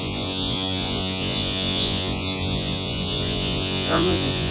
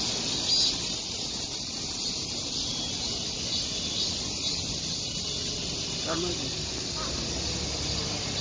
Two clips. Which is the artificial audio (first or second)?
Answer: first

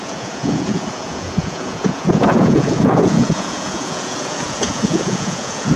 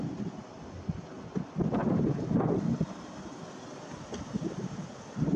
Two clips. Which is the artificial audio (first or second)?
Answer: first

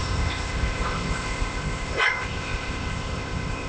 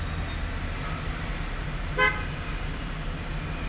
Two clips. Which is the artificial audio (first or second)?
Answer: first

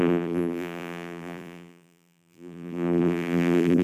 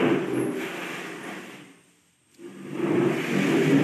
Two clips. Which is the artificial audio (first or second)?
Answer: first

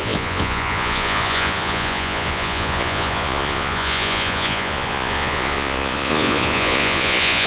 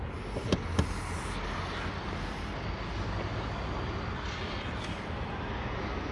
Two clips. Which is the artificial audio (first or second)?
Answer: first